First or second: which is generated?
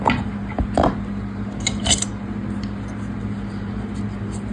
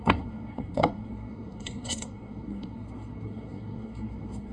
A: second